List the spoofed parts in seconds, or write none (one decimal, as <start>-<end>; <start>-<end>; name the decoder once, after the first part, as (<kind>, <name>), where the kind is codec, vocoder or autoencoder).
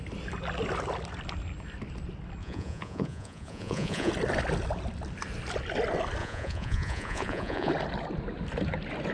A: 2.4-4.1 (vocoder, Vocos); 6.2-7.7